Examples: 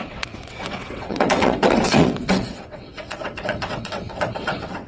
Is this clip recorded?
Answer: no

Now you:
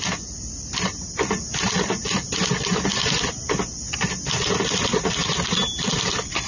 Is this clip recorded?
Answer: yes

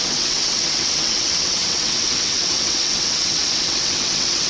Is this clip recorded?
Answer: no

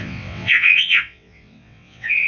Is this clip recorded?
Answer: no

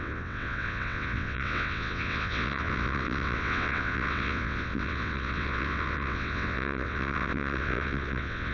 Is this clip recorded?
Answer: no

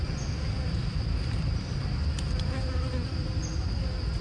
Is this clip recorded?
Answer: yes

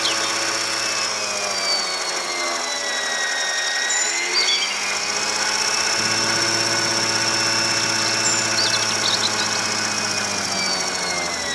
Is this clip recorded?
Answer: yes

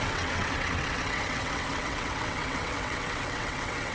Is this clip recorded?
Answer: no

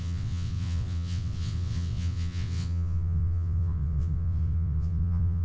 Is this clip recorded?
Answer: no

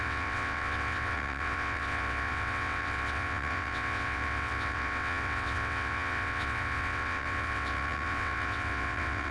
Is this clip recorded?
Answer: no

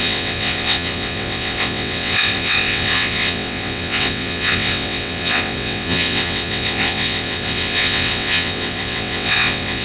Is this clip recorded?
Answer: no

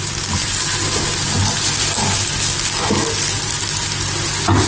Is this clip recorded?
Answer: yes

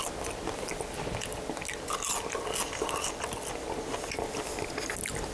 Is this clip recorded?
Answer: yes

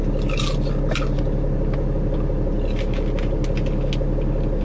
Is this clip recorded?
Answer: yes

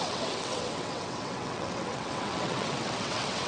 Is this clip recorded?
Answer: no